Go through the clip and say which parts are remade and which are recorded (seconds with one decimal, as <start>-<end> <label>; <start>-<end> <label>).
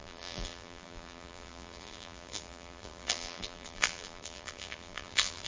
0.0-5.5 remade